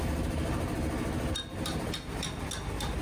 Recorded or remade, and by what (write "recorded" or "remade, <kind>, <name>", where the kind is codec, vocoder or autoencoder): recorded